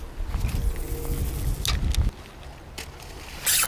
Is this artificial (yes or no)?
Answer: no